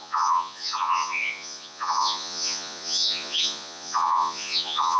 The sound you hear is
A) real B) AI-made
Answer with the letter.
B